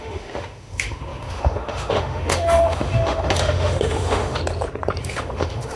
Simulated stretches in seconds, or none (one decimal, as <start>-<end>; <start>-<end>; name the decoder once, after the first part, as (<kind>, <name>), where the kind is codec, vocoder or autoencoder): 0.0-4.4 (autoencoder, DAC-VAE); 5.0-5.8